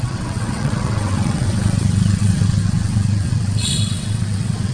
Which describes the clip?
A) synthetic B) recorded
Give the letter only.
A